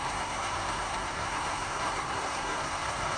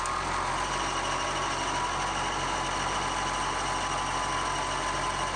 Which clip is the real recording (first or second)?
second